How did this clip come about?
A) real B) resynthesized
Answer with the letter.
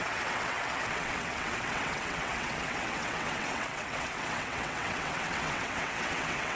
B